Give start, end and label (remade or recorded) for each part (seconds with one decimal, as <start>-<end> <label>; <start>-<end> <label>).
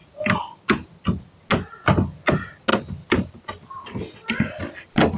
0.0-5.2 recorded